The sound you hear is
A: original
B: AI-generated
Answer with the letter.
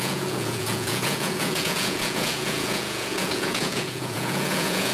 B